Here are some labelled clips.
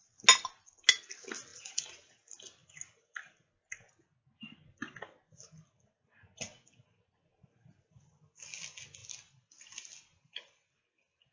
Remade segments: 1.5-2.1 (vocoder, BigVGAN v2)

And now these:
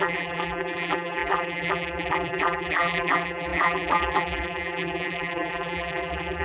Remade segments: 0.0-6.4 (vocoder, BigVGAN v2)